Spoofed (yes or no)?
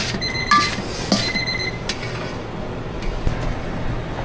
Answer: no